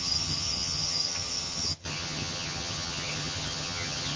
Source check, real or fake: fake